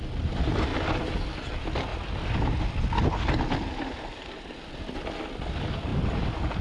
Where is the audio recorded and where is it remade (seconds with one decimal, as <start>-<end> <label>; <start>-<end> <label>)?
0.0-5.9 recorded; 5.9-6.6 remade